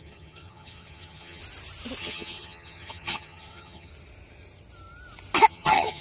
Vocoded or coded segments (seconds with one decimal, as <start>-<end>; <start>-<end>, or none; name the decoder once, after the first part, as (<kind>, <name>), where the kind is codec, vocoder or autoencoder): 0.0-1.4 (vocoder, HiFi-GAN); 2.0-3.9; 5.5-6.0